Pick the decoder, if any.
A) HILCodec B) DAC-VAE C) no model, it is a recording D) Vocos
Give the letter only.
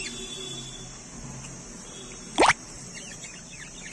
C